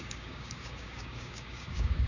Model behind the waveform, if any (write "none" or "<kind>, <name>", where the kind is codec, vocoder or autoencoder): codec, DAC